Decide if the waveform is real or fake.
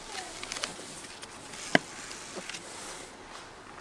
real